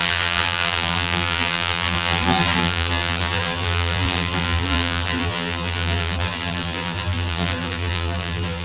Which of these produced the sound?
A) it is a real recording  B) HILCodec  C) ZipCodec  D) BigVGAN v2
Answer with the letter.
D